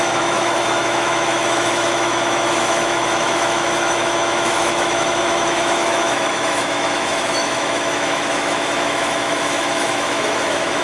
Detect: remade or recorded remade